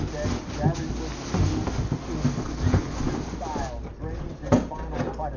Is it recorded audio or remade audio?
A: recorded